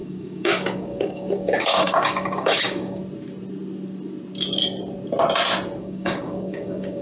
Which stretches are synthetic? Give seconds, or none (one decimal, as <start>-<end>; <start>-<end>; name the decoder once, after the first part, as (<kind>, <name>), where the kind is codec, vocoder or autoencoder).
0.0-3.0 (codec, DAC); 5.8-7.0

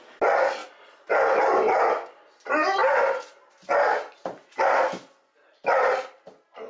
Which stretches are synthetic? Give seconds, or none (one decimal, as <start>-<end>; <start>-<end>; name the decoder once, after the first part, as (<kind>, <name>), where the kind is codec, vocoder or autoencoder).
none